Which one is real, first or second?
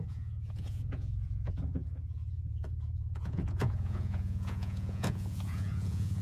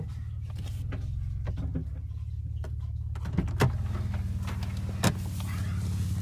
second